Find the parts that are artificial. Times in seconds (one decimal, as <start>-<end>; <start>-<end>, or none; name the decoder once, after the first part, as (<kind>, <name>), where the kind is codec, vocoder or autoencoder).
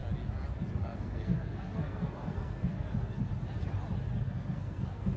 0.8-3.3 (codec, SNAC); 4.2-5.2